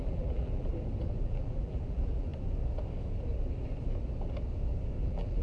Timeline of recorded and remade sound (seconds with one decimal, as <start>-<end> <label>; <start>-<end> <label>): 0.0-0.7 remade; 0.7-1.2 recorded; 1.2-2.3 remade; 2.3-5.0 recorded; 5.0-5.4 remade